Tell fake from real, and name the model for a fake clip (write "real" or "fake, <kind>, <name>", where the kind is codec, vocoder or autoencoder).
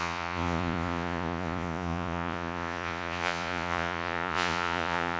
fake, vocoder, Vocos